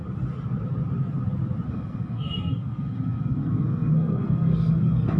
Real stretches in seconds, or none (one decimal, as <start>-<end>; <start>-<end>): 0.0-1.7